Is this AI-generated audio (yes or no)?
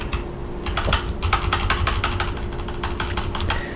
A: no